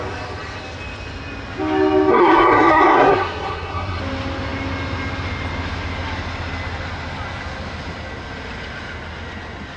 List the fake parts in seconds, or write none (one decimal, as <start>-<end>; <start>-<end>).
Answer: 2.1-4.0